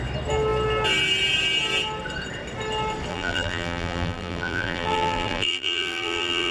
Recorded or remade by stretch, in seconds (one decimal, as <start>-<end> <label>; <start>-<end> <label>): 0.0-3.1 recorded; 3.1-6.5 remade

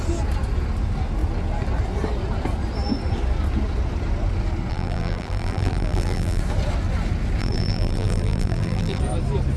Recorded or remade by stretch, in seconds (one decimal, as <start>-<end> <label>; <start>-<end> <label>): 0.0-4.7 recorded; 4.7-6.4 remade; 6.4-7.4 recorded; 7.4-9.0 remade; 9.0-9.6 recorded

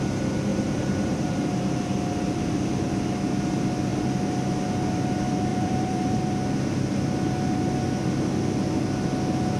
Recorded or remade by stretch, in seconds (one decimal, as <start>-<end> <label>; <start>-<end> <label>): 0.0-0.5 recorded; 0.5-1.3 remade; 1.3-5.5 recorded; 5.5-6.2 remade; 6.2-9.6 recorded

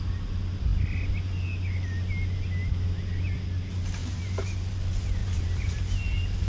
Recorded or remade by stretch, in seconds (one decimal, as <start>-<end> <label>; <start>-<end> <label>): 0.0-4.0 recorded; 4.0-4.7 remade; 4.7-5.2 recorded; 5.2-5.8 remade; 5.8-6.5 recorded

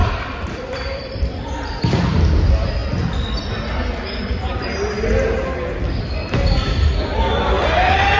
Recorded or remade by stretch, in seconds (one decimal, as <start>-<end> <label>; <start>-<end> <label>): 0.0-1.7 remade; 1.7-8.2 recorded

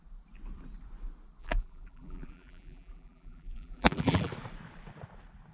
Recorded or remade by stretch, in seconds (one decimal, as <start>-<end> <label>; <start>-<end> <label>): 0.0-1.4 recorded; 1.4-4.3 remade; 4.3-5.5 recorded